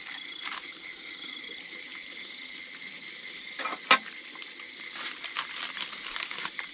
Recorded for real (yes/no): yes